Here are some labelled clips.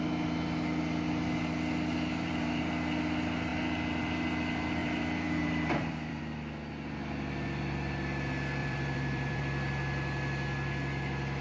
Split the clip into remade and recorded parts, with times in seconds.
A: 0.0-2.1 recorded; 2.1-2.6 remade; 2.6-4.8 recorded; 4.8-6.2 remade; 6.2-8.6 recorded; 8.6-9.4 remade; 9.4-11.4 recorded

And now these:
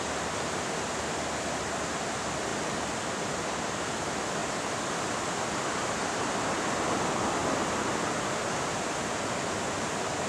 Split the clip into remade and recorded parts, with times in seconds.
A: 0.0-2.5 remade; 2.5-3.4 recorded; 3.4-4.4 remade; 4.4-5.9 recorded; 5.9-10.3 remade

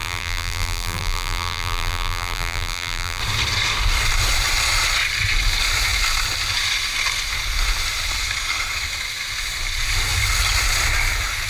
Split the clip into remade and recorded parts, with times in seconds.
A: 0.0-3.2 remade; 3.2-11.5 recorded

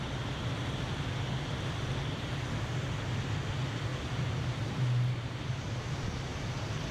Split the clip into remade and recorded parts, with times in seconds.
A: 0.0-3.9 recorded; 3.9-5.5 remade; 5.5-6.9 recorded